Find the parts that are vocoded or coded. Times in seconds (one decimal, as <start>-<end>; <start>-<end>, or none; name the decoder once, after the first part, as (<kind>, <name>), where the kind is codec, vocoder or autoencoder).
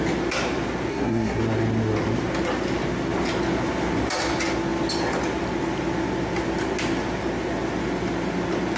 0.9-1.4 (codec, SNAC)